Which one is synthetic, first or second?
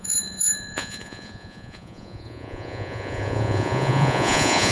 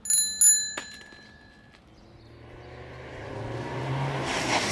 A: first